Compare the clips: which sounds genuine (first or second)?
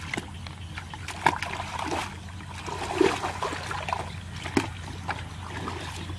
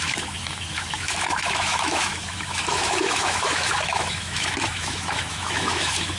first